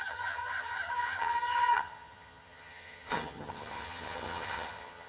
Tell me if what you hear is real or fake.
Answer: fake